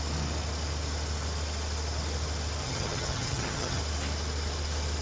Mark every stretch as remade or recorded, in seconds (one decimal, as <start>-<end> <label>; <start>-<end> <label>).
0.0-2.6 recorded; 2.6-3.8 remade; 3.8-5.0 recorded